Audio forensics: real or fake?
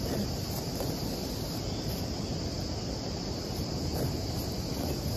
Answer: real